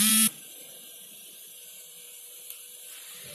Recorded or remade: remade